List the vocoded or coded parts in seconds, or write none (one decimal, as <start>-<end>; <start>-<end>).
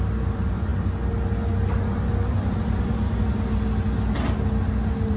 none